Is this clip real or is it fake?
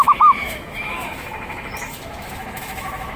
fake